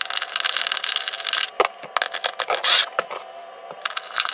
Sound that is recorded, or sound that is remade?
recorded